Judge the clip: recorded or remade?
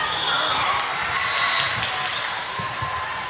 recorded